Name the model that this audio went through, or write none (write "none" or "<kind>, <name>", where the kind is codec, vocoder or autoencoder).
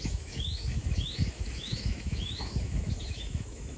autoencoder, DAC-VAE